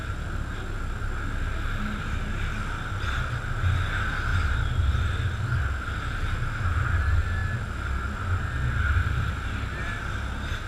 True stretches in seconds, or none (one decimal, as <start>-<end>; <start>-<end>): 0.0-10.7